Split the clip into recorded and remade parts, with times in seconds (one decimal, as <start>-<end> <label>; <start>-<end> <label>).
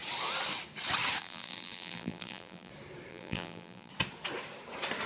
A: 0.0-1.2 recorded; 1.2-2.7 remade; 2.7-3.1 recorded; 3.1-3.9 remade; 3.9-5.1 recorded